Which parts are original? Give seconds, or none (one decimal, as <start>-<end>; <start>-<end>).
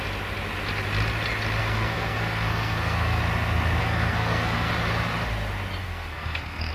0.0-1.6; 3.2-3.8; 4.7-5.8